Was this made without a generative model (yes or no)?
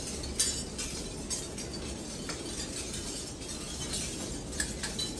yes